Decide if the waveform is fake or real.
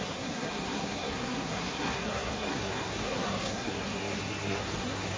fake